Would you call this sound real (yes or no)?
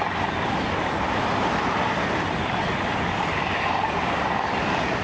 yes